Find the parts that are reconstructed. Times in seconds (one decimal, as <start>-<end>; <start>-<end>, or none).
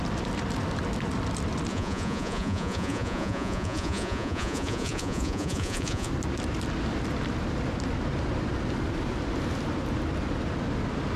1.7-6.1